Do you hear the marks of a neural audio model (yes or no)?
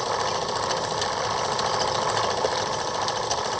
no